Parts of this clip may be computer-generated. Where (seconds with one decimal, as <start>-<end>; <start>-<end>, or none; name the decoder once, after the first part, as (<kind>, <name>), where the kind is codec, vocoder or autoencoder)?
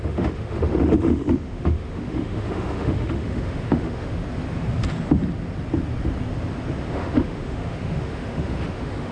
0.0-4.2 (autoencoder, DAC-VAE); 6.9-9.1